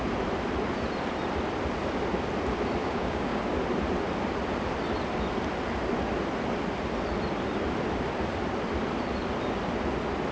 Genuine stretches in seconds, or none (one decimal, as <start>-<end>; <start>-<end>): 0.0-2.8; 3.4-10.3